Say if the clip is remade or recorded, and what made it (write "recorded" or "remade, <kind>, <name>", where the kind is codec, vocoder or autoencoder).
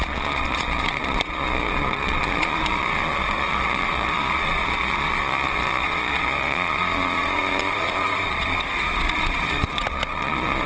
remade, vocoder, Vocos